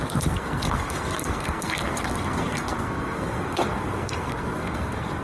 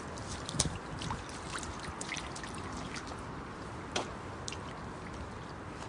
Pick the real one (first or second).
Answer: second